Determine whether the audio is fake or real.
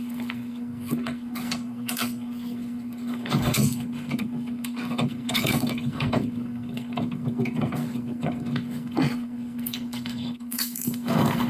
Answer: fake